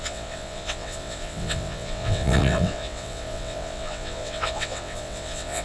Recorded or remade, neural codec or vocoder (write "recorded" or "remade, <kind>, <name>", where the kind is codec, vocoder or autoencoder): remade, vocoder, WaveNeXt